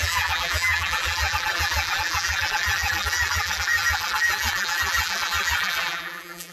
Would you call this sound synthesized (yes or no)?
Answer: yes